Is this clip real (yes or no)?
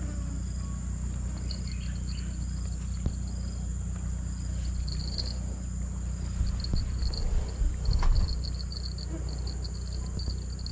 yes